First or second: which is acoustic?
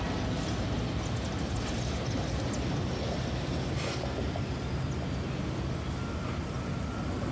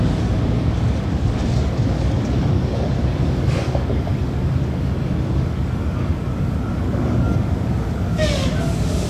first